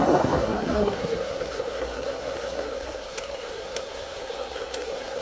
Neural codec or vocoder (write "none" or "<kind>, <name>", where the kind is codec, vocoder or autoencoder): codec, SNAC